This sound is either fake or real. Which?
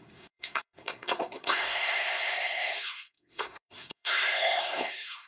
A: fake